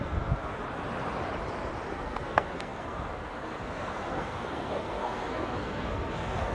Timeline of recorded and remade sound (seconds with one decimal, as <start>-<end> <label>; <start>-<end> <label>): 0.0-0.6 remade; 0.6-1.9 recorded; 1.9-6.5 remade